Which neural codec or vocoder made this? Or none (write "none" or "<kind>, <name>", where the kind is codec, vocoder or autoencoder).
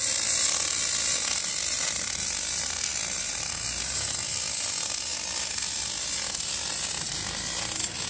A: none